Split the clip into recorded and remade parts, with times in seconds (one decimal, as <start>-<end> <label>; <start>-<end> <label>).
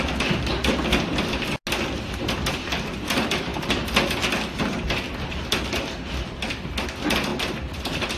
0.0-8.2 recorded